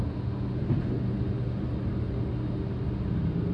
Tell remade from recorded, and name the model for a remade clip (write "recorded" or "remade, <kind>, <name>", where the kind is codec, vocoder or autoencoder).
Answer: recorded